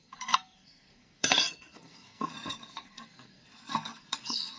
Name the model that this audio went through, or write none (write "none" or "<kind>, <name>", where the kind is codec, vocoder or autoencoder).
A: codec, SNAC